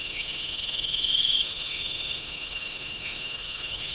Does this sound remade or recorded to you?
remade